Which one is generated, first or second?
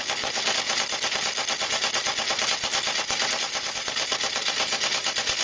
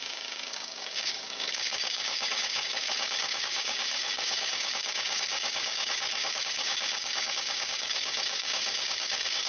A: second